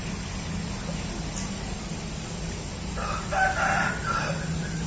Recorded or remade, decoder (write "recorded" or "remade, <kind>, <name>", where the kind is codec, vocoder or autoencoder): recorded